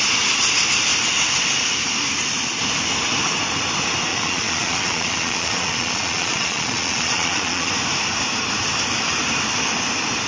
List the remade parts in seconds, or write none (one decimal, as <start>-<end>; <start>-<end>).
4.1-7.7

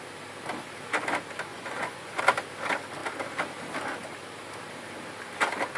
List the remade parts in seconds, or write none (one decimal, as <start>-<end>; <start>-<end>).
1.5-2.2